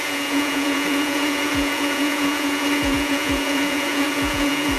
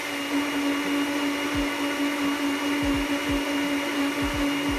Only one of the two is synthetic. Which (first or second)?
first